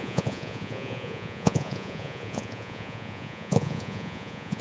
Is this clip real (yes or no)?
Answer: no